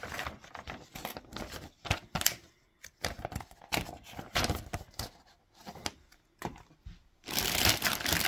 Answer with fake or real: real